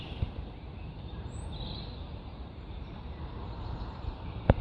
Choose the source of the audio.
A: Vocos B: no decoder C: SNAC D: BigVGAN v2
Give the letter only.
D